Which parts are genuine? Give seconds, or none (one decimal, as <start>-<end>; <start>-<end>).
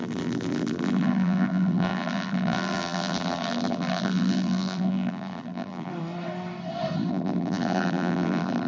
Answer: 5.9-7.1